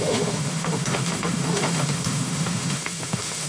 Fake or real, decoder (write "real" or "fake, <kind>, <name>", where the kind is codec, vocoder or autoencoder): fake, autoencoder, DAC-VAE